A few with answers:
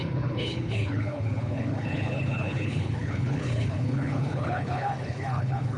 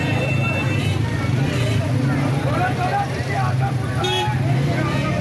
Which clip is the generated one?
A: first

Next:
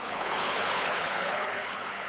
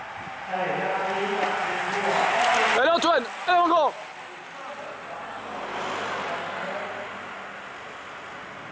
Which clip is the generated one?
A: first